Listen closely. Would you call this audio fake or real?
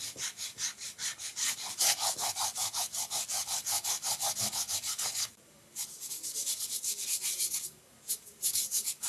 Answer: fake